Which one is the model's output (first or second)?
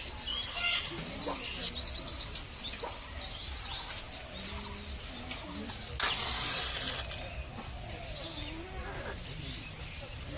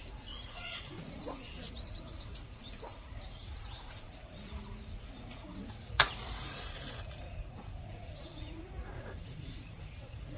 second